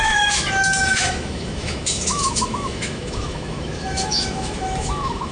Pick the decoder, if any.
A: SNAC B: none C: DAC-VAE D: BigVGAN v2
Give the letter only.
C